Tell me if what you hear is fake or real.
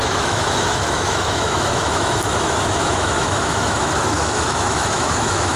fake